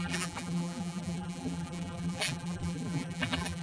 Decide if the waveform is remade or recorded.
remade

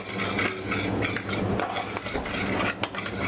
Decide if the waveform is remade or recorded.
recorded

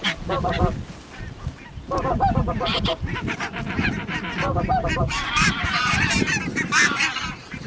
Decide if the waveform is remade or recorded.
remade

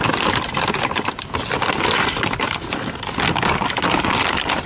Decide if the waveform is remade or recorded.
recorded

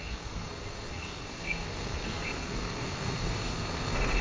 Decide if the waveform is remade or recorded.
remade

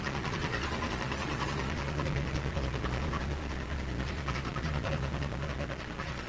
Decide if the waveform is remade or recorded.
remade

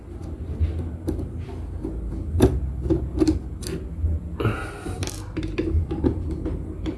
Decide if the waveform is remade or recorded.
recorded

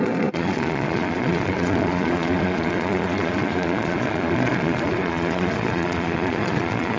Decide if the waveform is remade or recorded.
remade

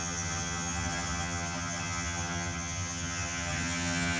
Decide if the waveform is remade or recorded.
remade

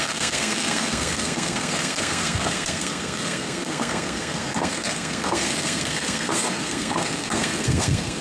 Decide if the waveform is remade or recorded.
remade